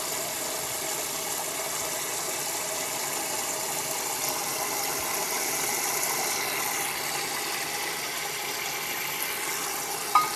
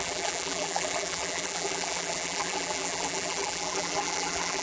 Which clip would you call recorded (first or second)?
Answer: first